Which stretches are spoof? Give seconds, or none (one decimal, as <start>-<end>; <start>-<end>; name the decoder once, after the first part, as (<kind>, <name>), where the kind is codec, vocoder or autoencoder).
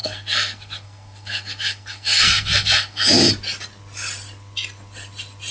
0.0-3.3 (codec, SNAC)